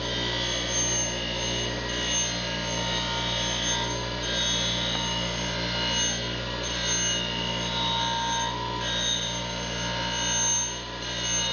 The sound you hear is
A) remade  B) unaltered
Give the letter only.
B